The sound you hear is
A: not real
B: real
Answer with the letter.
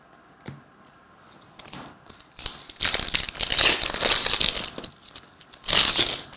B